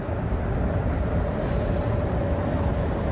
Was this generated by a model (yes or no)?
no